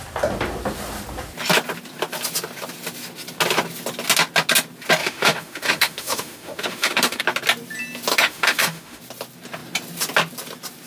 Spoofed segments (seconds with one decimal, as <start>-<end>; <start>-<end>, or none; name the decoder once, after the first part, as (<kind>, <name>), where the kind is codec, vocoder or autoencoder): 5.0-7.2 (autoencoder, DAC-VAE); 8.1-9.0